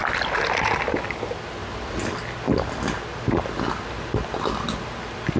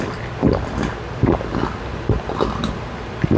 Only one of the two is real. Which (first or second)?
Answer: first